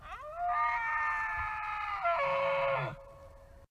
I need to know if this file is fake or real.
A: real